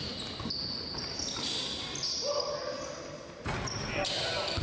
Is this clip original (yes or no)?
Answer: yes